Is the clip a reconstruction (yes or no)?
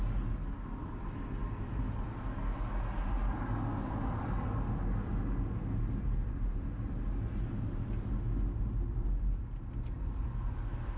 no